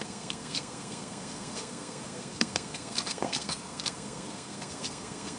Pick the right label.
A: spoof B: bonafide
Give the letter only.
A